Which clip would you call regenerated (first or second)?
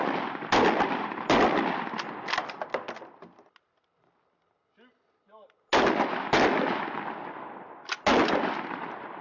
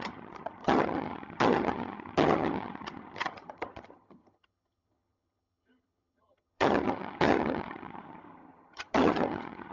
second